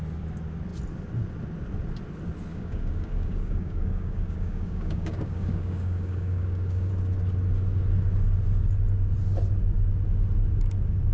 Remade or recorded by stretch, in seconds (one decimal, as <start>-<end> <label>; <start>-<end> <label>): 0.0-2.5 recorded; 2.5-6.9 remade; 6.9-11.1 recorded